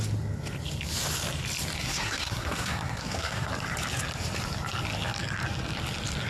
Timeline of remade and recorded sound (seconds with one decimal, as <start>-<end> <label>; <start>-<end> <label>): 0.0-1.8 recorded; 1.8-3.5 remade; 3.5-6.3 recorded